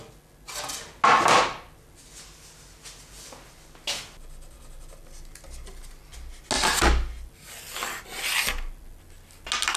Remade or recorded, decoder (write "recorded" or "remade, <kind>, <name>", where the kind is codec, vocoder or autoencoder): recorded